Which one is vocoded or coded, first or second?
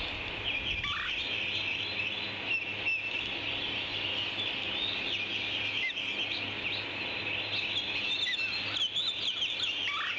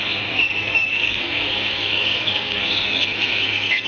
second